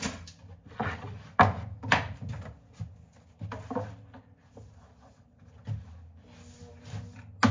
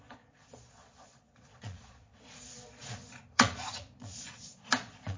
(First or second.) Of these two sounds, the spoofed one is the second